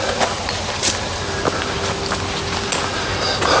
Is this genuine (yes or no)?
yes